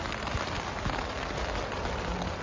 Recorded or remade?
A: recorded